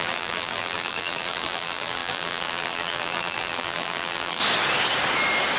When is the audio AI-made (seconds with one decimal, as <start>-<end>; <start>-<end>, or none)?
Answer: 0.0-4.4